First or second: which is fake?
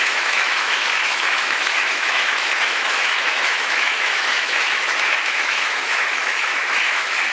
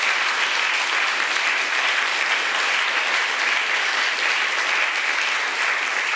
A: first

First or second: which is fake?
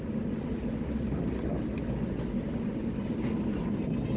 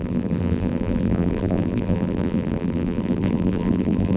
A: second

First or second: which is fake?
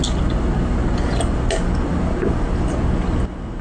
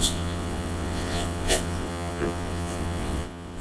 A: second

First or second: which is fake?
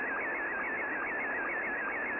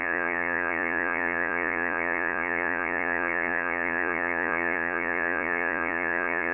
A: second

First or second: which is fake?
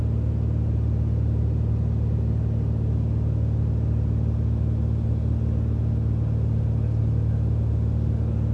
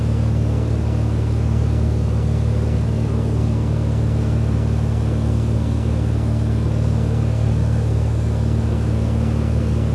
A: second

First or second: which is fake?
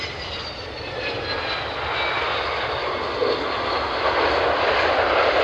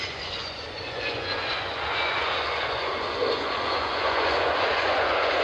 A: second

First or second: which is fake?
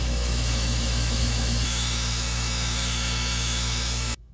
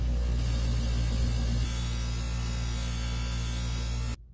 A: first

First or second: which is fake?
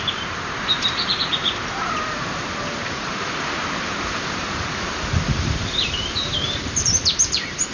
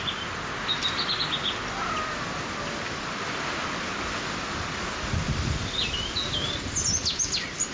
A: first